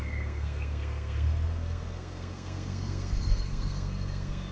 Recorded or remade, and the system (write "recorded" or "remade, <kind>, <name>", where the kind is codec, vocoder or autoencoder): remade, codec, SNAC